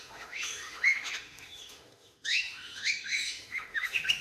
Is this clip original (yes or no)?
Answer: no